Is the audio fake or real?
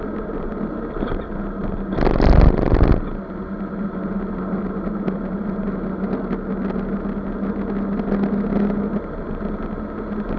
real